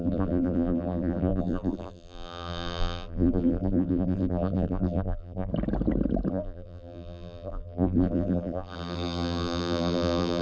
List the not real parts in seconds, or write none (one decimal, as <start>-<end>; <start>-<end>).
0.0-5.5; 6.3-10.4